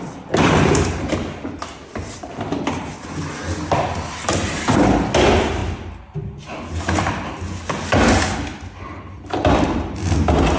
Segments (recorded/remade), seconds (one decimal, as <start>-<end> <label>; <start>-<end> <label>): 0.0-10.6 recorded